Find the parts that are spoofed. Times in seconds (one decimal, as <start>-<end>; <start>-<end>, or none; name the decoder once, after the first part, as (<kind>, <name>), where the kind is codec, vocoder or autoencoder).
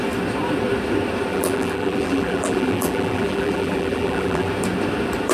1.3-4.5 (vocoder, BigVGAN v2)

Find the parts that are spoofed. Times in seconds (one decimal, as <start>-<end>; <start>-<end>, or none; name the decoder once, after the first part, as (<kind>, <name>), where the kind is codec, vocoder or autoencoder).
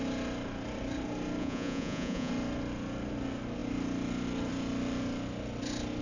1.4-2.3 (vocoder, Vocos)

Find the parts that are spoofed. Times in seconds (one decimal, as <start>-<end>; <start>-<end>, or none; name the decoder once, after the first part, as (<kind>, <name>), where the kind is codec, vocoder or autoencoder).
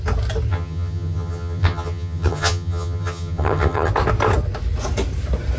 0.5-3.9 (vocoder, HiFi-GAN)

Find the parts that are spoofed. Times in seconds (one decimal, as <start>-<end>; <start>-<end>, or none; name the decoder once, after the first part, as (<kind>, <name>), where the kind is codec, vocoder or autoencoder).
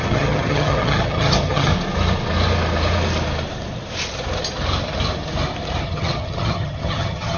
0.0-1.7 (vocoder, HiFi-GAN); 5.8-7.4